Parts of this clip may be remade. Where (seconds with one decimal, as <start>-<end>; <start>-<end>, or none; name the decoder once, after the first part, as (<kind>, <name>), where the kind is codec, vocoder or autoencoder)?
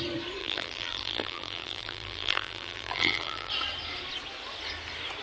0.4-3.5 (vocoder, BigVGAN v2)